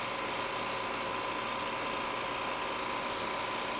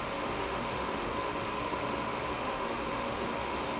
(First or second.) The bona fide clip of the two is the first